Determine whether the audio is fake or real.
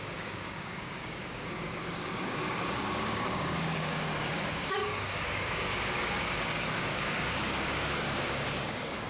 fake